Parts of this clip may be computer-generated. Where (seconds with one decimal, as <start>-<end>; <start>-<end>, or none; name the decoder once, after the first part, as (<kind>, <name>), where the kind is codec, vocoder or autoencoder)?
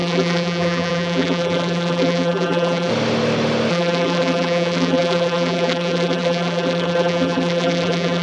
0.0-2.9 (vocoder, BigVGAN v2); 3.7-8.2